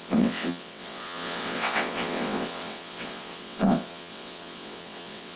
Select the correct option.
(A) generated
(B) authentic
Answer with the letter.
A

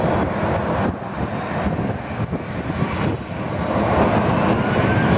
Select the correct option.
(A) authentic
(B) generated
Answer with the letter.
A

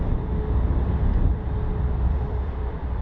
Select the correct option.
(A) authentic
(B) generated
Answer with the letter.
B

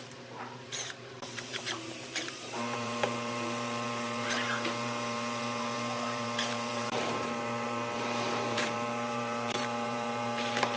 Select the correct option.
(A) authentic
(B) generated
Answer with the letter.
B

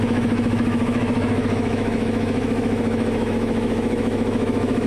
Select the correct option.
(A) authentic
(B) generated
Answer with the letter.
B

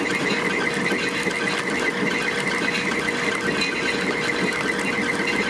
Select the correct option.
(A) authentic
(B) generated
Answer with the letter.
A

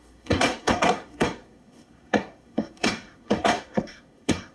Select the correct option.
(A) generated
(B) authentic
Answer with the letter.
A